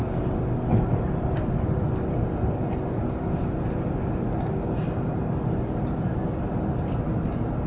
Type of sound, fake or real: real